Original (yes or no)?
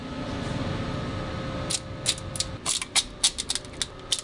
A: yes